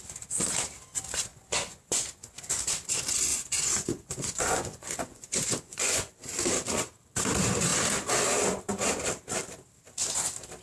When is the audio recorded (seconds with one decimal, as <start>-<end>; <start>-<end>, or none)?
0.0-1.3; 2.4-3.3; 6.1-10.6